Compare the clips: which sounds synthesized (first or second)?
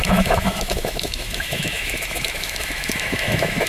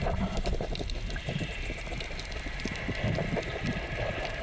first